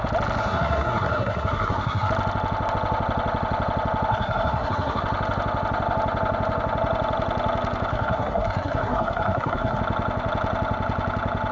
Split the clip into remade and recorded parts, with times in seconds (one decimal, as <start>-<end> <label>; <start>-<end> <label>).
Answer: 0.0-0.4 recorded; 0.4-2.1 remade; 2.1-4.1 recorded; 4.1-5.0 remade; 5.0-7.9 recorded; 7.9-9.8 remade; 9.8-11.5 recorded